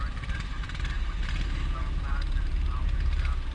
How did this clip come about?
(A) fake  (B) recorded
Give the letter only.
A